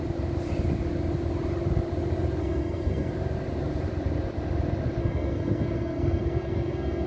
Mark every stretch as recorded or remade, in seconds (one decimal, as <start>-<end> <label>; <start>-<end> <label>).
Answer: 0.0-2.4 recorded; 2.4-3.1 remade; 3.1-5.0 recorded; 5.0-7.1 remade